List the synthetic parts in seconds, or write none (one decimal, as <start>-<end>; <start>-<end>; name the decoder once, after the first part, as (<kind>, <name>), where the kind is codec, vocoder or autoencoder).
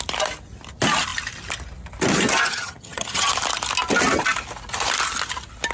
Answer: 2.5-3.3 (vocoder, HiFi-GAN)